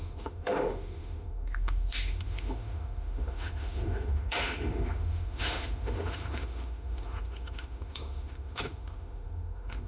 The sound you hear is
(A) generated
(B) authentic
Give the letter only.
A